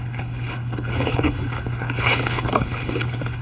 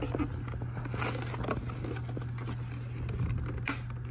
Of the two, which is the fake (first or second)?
first